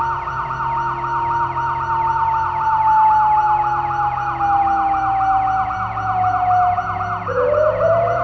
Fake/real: real